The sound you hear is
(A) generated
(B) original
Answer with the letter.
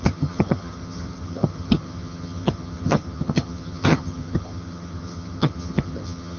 A